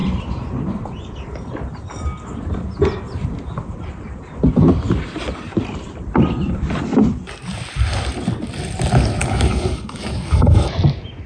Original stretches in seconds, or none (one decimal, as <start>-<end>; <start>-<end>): 0.0-9.2; 10.7-11.3